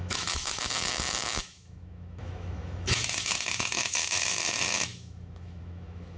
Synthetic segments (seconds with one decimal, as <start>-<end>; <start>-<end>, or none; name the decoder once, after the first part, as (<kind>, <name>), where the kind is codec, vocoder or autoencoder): 0.0-6.2 (autoencoder, DAC-VAE)